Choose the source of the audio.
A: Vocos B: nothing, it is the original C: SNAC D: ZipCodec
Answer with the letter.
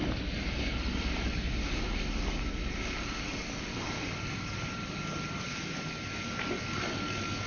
B